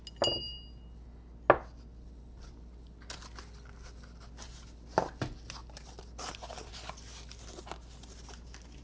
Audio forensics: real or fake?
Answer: real